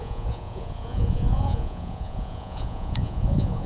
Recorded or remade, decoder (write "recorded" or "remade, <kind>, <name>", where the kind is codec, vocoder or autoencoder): remade, vocoder, Vocos